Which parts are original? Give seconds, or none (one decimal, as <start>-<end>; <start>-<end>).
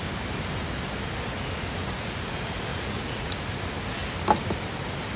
0.0-2.7; 3.4-5.2